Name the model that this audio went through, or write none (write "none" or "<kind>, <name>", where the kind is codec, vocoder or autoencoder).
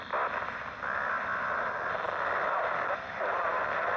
none